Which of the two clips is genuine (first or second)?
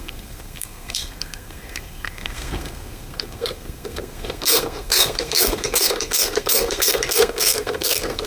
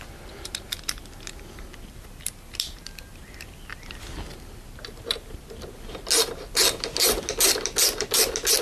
second